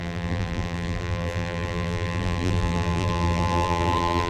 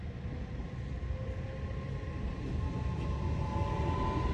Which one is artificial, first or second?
first